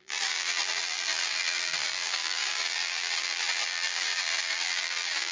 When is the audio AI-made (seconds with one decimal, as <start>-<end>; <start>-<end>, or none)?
0.0-5.3

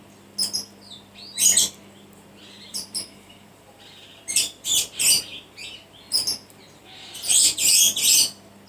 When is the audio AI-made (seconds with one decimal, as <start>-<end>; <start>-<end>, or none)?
2.7-4.8